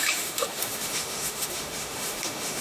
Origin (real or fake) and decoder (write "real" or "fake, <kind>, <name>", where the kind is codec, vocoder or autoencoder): fake, autoencoder, DAC-VAE